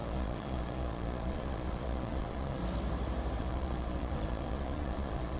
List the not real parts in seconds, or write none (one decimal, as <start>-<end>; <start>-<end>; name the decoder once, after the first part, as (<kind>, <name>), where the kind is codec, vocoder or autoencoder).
0.0-2.6 (vocoder, Vocos); 3.4-5.4